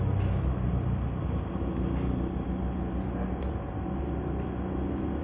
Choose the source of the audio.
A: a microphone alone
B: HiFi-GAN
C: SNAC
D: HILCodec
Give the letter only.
A